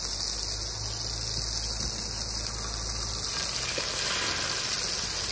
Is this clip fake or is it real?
real